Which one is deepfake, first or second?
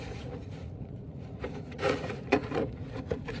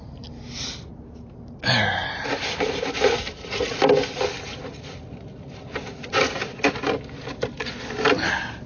first